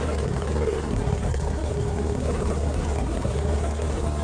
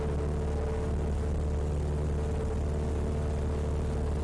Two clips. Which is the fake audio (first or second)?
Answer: first